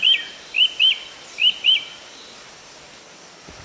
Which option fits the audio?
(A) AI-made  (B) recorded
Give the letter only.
B